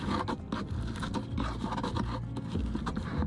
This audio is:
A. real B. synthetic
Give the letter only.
A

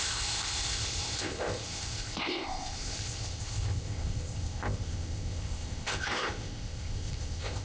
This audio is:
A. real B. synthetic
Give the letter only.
B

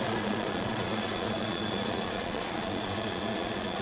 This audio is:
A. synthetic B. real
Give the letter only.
A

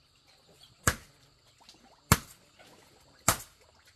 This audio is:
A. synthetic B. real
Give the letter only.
B